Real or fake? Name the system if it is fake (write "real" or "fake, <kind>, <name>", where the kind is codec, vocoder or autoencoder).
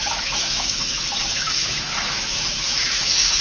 fake, autoencoder, DAC-VAE